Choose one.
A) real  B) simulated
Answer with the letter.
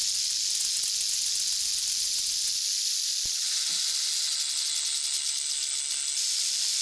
A